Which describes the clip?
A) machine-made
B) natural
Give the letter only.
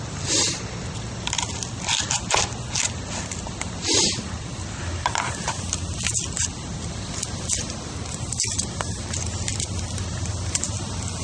B